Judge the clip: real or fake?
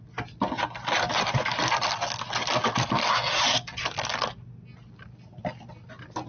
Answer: real